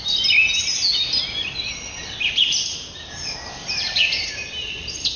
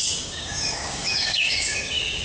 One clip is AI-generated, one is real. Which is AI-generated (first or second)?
second